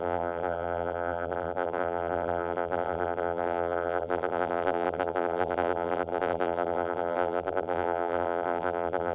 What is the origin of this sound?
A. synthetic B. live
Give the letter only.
A